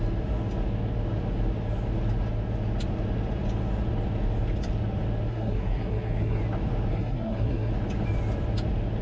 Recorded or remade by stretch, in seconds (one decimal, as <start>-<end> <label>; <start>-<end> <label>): 0.0-5.3 recorded; 5.3-6.4 remade; 6.4-6.9 recorded; 6.9-7.7 remade; 7.7-9.0 recorded